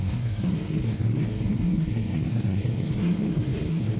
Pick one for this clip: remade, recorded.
remade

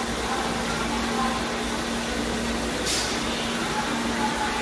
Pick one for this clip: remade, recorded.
recorded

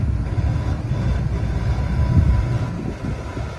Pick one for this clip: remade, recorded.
recorded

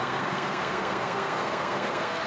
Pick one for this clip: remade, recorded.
remade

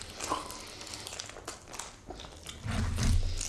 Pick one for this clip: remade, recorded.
recorded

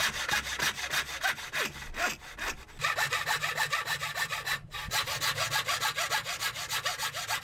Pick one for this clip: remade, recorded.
recorded